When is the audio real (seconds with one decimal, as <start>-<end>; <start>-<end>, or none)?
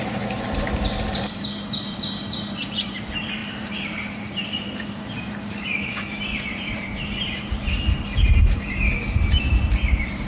none